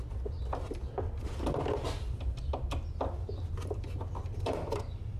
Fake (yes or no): no